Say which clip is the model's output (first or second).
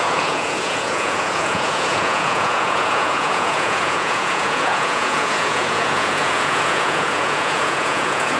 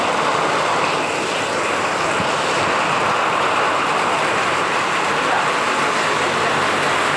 first